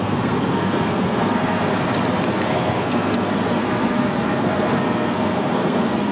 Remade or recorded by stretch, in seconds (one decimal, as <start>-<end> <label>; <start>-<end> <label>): 0.0-1.7 remade; 1.7-2.3 recorded; 2.3-6.1 remade